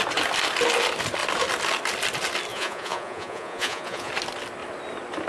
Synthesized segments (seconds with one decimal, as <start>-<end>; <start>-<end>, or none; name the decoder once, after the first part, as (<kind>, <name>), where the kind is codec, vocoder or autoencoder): 2.5-4.1 (vocoder, Vocos)